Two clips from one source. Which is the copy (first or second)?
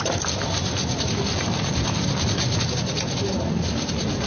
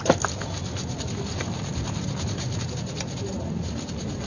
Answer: first